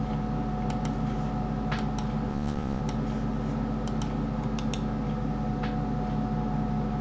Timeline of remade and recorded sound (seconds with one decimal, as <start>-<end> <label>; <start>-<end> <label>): 0.0-2.3 recorded; 2.3-2.8 remade; 2.8-7.0 recorded